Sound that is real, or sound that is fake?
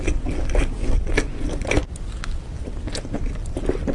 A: real